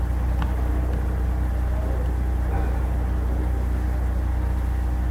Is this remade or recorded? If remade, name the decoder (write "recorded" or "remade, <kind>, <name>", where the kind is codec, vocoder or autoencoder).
recorded